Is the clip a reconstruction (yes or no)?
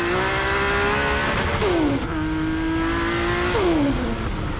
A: no